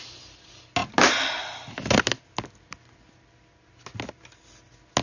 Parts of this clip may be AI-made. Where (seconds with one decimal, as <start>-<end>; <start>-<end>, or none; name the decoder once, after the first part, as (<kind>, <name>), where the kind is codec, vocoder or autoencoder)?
none